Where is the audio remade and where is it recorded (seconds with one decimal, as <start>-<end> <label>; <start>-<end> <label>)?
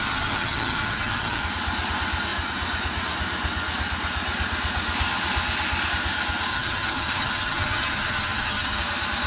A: 0.0-1.4 remade; 1.4-6.5 recorded; 6.5-8.8 remade; 8.8-9.3 recorded